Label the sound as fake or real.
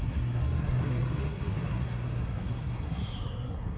fake